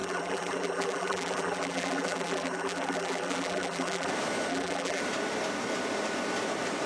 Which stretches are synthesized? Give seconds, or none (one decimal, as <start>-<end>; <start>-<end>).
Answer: 0.0-4.1; 4.5-5.0